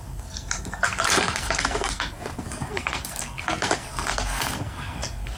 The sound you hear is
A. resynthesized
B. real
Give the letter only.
A